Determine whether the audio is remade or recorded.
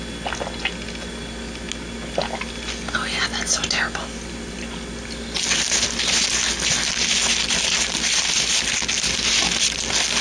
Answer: recorded